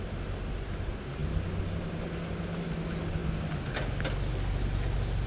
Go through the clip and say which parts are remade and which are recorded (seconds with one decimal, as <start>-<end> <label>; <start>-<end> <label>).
0.0-5.3 recorded